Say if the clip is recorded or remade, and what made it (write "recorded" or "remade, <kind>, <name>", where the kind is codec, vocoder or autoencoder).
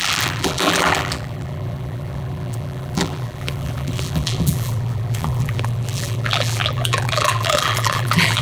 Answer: remade, vocoder, BigVGAN v2